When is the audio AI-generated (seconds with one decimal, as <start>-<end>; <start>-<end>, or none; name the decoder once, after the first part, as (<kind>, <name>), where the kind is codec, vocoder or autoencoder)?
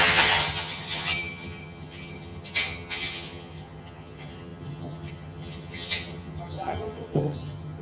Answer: 0.0-7.8 (vocoder, HiFi-GAN)